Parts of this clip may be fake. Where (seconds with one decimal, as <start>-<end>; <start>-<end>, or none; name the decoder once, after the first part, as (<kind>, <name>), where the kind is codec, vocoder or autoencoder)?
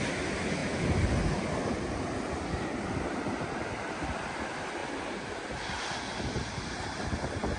none